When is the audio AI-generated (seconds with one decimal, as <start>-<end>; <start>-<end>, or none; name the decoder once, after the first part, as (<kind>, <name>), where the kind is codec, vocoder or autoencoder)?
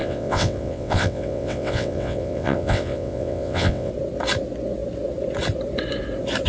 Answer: 0.0-3.9 (vocoder, WaveNeXt)